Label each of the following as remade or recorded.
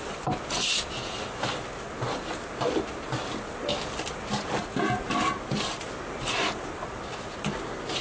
recorded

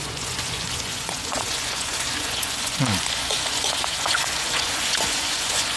remade